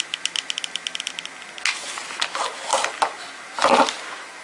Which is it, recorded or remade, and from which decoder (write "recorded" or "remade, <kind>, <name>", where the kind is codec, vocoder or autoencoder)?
recorded